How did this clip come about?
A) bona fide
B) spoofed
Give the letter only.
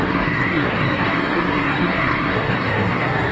B